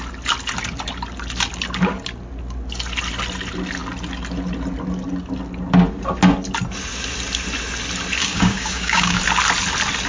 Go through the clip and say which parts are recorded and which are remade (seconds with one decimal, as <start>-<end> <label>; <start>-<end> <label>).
0.0-8.2 recorded; 8.2-9.2 remade; 9.2-10.1 recorded